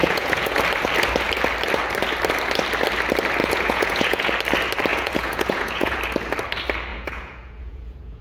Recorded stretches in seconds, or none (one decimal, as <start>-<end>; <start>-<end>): 0.6-3.4; 4.3-4.9; 6.0-6.9